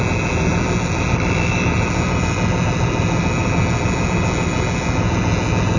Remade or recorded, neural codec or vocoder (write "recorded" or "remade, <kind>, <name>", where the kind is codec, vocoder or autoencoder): recorded